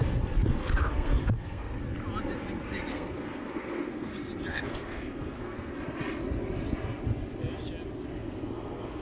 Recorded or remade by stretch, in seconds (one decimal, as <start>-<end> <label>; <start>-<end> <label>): 0.0-0.6 recorded; 0.6-1.8 remade; 1.8-2.9 recorded; 2.9-4.1 remade; 4.1-4.5 recorded; 4.5-5.7 remade; 5.7-8.2 recorded; 8.2-9.0 remade